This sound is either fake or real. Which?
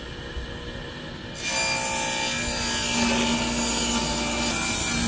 real